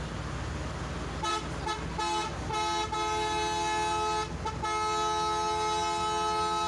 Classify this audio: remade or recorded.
recorded